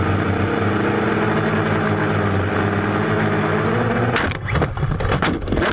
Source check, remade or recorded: recorded